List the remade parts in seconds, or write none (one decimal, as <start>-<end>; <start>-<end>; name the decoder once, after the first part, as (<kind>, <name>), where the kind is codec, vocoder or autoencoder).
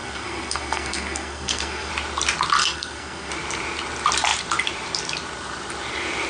0.0-1.9 (codec, SNAC); 2.6-3.3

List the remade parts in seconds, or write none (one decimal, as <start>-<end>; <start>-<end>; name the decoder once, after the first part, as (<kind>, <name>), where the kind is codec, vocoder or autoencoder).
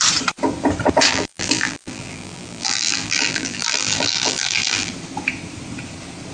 1.1-4.9 (vocoder, BigVGAN v2)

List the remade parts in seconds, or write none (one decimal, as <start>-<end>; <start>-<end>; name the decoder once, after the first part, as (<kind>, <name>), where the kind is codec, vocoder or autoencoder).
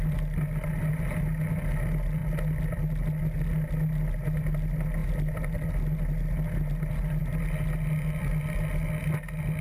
none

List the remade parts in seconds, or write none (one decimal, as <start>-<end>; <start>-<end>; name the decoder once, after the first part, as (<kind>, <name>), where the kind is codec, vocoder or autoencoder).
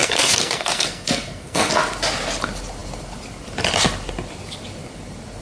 0.0-1.8 (codec, SNAC)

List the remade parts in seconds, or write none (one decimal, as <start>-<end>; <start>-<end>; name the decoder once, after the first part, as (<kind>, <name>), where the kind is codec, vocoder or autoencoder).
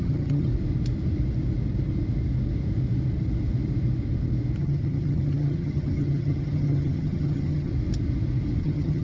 0.0-0.5 (vocoder, HiFi-GAN); 4.6-7.7; 8.6-9.0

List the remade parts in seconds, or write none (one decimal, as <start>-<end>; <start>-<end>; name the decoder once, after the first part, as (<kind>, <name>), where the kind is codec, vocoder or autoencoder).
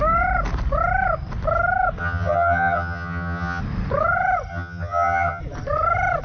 2.0-3.6 (vocoder, HiFi-GAN); 4.5-5.4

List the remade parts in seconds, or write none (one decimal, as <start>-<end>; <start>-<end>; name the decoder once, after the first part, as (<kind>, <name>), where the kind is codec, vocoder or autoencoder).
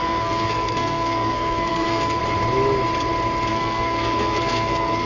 0.0-2.2 (codec, SNAC); 3.5-5.1